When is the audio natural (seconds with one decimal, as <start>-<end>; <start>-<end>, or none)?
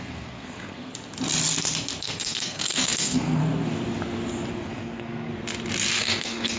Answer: 0.9-2.0; 3.4-4.5; 5.3-6.0